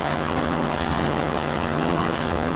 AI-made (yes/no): yes